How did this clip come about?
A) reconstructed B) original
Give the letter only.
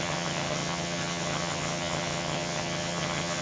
A